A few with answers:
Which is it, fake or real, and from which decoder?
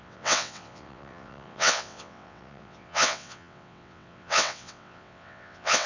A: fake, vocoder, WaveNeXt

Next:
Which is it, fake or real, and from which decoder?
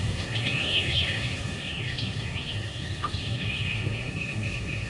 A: fake, codec, SNAC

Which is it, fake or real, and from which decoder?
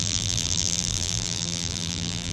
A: fake, vocoder, BigVGAN v2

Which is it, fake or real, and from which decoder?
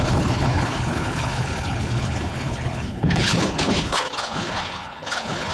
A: fake, codec, HILCodec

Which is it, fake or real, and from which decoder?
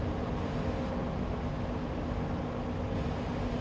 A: real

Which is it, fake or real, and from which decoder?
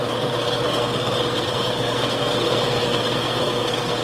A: fake, codec, SNAC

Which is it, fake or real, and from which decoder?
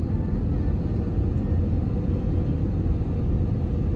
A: real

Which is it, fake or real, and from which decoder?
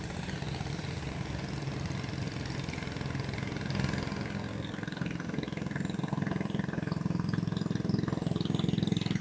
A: real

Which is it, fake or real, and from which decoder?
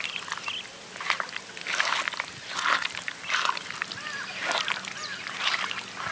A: real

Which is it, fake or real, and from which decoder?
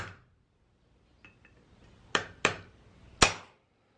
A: real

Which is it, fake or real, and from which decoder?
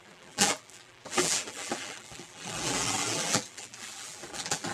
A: fake, vocoder, BigVGAN v2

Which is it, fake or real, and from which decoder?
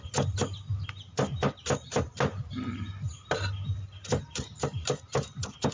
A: real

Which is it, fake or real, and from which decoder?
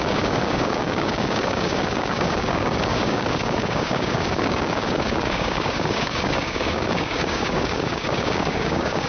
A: fake, codec, DAC